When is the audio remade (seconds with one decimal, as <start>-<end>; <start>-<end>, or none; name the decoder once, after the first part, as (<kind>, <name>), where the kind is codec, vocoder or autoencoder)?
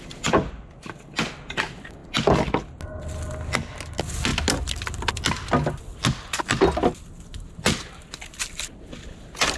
none